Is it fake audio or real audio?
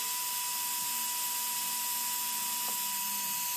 real